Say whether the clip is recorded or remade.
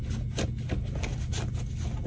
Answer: recorded